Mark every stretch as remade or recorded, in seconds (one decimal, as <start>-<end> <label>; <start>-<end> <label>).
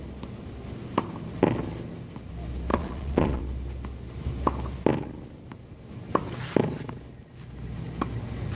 0.0-2.7 recorded; 2.7-3.4 remade; 3.4-8.6 recorded